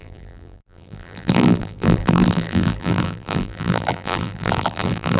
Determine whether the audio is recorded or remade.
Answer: remade